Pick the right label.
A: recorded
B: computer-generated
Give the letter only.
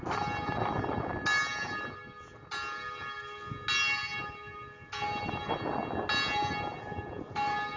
A